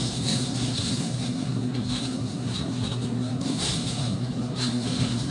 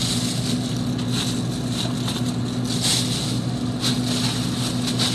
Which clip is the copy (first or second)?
first